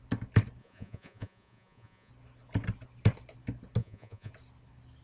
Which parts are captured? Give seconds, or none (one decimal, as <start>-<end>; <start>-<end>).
0.0-0.6; 2.1-3.8; 4.3-5.0